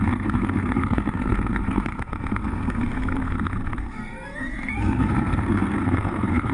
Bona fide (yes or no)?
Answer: no